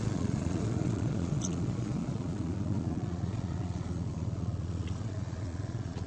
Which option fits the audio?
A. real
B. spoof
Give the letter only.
B